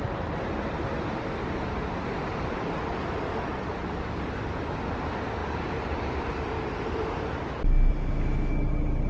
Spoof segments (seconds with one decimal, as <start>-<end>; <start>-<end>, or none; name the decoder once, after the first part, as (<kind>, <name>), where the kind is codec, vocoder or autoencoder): 2.3-2.9 (vocoder, BigVGAN v2); 3.7-4.3; 5.4-7.3